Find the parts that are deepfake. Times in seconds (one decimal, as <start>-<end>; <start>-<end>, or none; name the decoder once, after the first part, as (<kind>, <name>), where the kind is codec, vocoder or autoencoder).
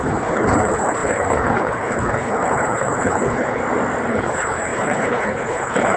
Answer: 0.0-3.6 (codec, HILCodec); 4.1-6.0